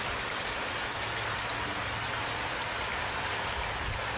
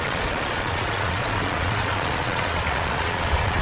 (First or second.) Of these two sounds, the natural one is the first